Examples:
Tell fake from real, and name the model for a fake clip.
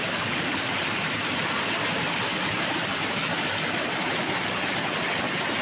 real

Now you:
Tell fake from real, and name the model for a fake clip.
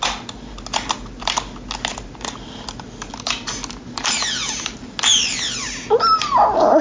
real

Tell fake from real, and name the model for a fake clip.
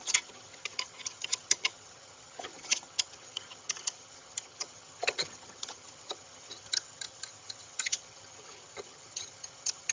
fake, vocoder, HiFi-GAN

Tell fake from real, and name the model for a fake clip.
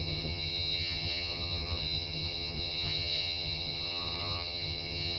fake, vocoder, HiFi-GAN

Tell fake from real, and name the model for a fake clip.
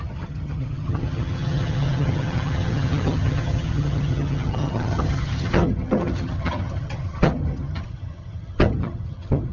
fake, vocoder, HiFi-GAN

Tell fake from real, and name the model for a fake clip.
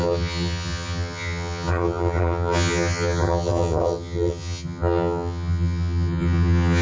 fake, vocoder, HiFi-GAN